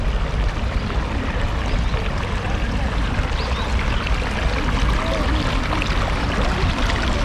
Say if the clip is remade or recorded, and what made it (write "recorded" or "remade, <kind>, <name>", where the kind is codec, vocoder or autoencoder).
recorded